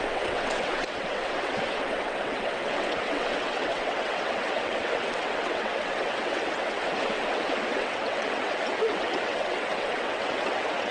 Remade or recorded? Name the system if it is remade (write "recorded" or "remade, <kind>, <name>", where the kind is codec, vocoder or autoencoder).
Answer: remade, vocoder, WaveNeXt